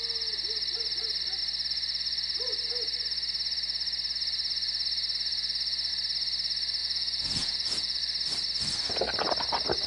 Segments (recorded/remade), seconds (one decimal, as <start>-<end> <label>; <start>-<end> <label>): 0.0-6.8 recorded; 6.8-8.0 remade; 8.0-9.9 recorded